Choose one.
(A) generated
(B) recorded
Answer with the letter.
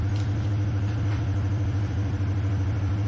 A